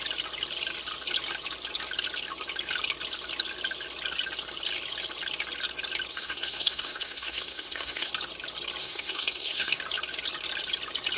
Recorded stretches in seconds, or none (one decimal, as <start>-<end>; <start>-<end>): 0.0-6.1; 8.1-8.8; 9.8-11.2